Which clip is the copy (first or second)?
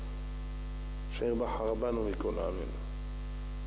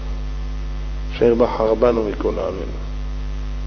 second